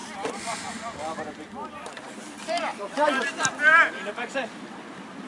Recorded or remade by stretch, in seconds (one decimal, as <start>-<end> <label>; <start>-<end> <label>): 0.0-5.3 remade